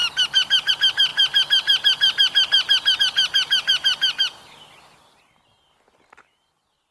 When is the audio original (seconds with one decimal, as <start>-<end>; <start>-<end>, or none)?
0.0-6.9